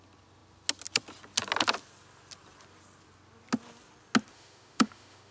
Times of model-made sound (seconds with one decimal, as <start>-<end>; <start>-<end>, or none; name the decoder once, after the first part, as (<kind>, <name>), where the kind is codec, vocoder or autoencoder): 4.3-5.3 (autoencoder, DAC-VAE)